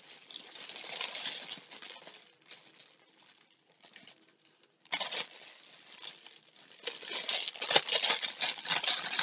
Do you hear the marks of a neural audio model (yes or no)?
no